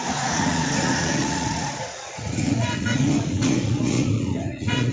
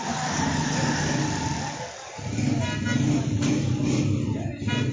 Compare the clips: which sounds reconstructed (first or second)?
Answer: first